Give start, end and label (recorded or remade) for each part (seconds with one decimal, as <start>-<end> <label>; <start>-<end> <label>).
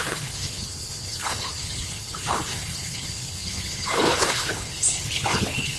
0.0-5.8 remade